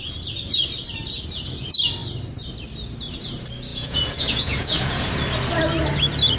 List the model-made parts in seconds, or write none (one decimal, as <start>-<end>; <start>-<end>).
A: 3.7-5.1